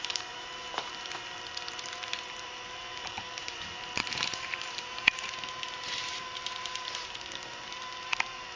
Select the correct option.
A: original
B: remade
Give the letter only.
B